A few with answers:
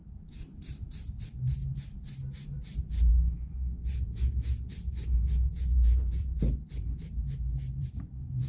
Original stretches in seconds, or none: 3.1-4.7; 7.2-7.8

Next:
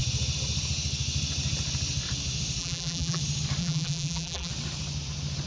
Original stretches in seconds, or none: 0.0-2.6; 3.2-3.6; 4.5-5.5